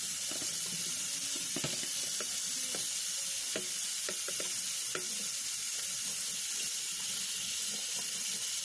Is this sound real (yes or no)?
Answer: yes